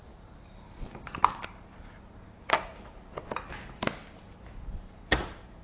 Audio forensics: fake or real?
fake